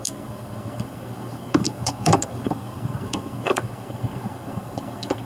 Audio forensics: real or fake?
fake